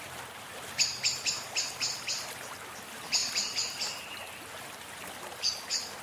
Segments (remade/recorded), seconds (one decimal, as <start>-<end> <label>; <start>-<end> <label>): 0.0-6.0 recorded